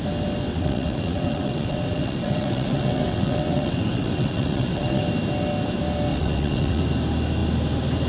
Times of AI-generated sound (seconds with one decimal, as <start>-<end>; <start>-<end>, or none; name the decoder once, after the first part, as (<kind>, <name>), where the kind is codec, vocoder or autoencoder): 0.5-5.0 (vocoder, WaveNeXt); 6.1-6.8